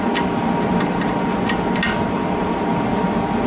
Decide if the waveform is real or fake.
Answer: real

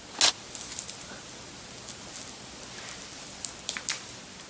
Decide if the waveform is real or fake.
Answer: real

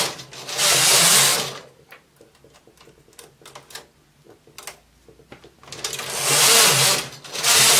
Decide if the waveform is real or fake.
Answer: real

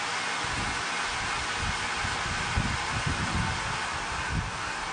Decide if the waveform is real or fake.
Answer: real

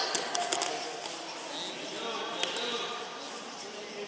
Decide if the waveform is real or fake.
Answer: real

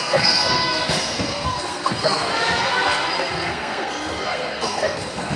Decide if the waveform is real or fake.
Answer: fake